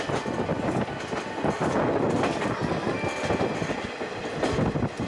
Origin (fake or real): real